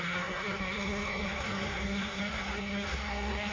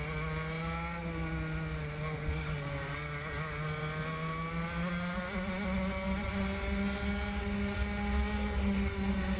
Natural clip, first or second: second